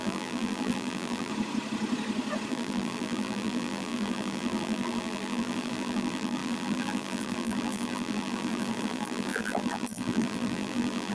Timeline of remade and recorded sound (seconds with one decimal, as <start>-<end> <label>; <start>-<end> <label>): 0.0-1.3 remade; 1.3-2.5 recorded; 2.5-11.1 remade